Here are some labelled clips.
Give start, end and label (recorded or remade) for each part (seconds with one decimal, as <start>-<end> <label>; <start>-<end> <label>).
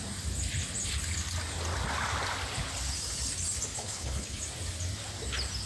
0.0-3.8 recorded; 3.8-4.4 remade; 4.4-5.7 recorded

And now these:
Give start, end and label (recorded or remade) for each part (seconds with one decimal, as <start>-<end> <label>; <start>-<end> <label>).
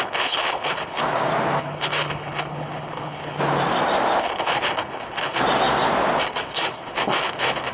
0.0-1.0 remade; 1.0-1.6 recorded; 1.6-3.4 remade; 3.4-4.2 recorded; 4.2-5.4 remade; 5.4-6.2 recorded; 6.2-7.7 remade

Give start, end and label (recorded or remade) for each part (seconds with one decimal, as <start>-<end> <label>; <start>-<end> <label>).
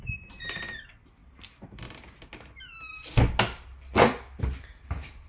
0.0-5.3 recorded